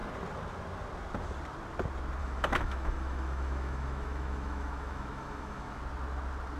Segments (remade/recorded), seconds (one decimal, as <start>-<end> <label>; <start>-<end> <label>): 0.0-2.2 recorded; 2.2-5.8 remade; 5.8-6.6 recorded